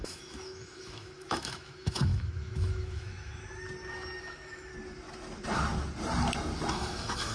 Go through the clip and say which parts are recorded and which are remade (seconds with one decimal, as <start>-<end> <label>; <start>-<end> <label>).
0.0-3.4 remade; 3.4-4.2 recorded; 4.2-4.7 remade; 4.7-6.7 recorded; 6.7-7.3 remade